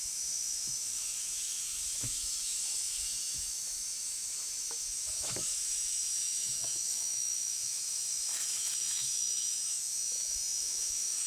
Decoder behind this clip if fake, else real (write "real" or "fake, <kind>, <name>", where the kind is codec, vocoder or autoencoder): fake, autoencoder, DAC-VAE